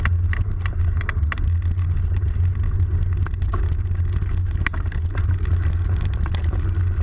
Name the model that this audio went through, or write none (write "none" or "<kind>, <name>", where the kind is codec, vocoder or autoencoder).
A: none